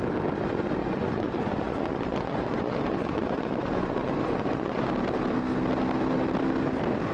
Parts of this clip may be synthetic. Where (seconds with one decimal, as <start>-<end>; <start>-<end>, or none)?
0.8-4.9